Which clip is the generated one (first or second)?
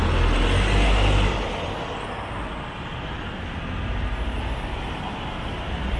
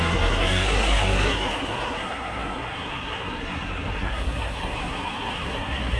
second